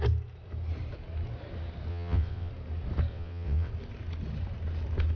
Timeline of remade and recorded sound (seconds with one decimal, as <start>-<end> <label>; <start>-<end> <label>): 0.0-1.9 recorded; 1.9-2.5 remade; 2.5-3.1 recorded; 3.1-3.7 remade; 3.7-5.2 recorded